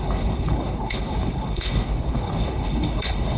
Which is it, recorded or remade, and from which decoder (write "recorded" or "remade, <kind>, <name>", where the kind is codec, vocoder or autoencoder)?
remade, codec, HILCodec